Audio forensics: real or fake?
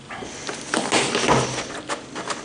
real